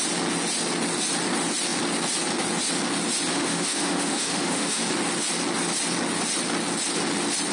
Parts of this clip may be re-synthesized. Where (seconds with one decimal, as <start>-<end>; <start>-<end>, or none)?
3.3-4.8